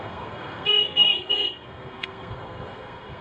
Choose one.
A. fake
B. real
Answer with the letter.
A